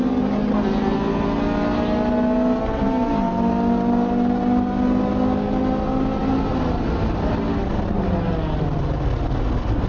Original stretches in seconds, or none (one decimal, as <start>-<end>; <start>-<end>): 0.0-9.9